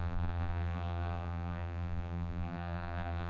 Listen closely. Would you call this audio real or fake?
fake